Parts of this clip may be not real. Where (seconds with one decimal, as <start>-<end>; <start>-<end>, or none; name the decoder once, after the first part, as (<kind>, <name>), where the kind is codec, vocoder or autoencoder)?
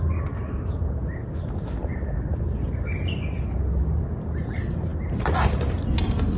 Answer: none